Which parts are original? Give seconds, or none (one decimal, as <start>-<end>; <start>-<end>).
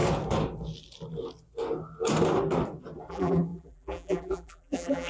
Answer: 0.0-3.1